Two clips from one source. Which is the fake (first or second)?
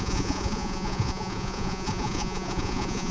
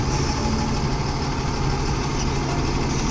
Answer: first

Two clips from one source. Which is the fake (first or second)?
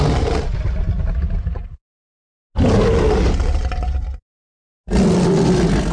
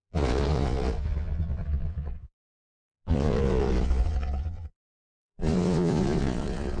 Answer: second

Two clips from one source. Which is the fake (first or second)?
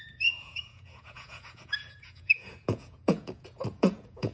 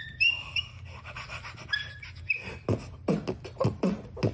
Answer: first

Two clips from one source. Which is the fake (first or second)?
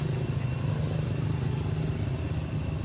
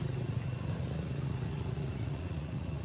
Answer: second